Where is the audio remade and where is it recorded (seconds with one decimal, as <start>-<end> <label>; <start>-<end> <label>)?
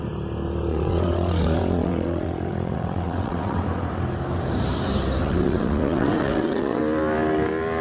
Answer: 0.0-0.7 recorded; 0.7-3.6 remade; 3.6-5.2 recorded; 5.2-6.8 remade; 6.8-7.8 recorded